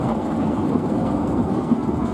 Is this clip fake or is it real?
fake